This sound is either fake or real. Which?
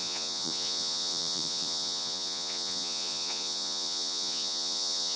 fake